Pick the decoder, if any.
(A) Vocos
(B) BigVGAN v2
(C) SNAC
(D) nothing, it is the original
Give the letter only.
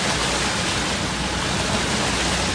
D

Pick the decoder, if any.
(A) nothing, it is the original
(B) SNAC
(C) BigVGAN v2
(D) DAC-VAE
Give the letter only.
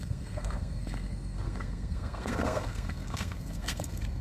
B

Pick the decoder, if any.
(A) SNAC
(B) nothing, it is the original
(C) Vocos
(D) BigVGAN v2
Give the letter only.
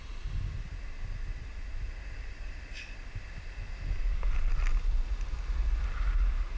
B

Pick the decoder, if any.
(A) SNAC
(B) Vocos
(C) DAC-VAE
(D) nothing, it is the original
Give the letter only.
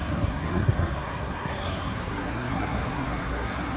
A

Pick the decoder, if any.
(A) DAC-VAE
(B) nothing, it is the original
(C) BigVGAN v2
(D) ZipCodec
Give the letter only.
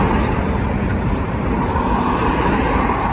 C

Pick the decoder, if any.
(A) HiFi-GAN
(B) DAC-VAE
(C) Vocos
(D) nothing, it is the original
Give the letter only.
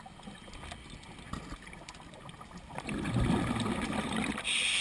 D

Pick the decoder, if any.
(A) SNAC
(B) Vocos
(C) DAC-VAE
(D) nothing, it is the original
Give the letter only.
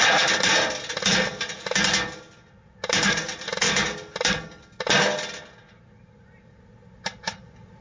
D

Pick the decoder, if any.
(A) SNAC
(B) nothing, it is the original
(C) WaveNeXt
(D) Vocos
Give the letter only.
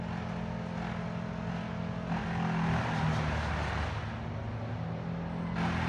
B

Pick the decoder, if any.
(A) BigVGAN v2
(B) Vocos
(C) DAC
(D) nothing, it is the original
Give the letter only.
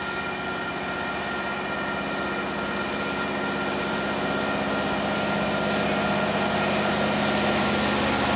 D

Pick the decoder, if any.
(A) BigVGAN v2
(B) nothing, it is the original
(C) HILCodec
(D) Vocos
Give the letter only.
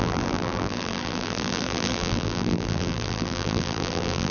A